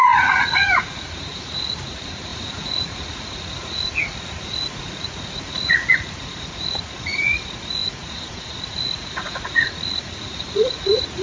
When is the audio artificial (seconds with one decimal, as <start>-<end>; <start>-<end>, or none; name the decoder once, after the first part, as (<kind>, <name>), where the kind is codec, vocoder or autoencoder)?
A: 0.0-11.2 (vocoder, Vocos)